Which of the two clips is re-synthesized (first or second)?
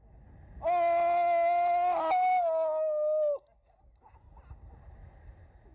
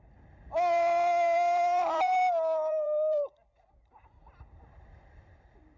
second